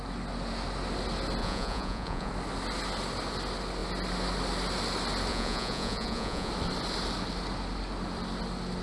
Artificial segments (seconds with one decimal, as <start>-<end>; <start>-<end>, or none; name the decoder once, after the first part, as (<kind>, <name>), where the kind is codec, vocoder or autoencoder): 1.4-2.3 (vocoder, Vocos); 5.3-6.5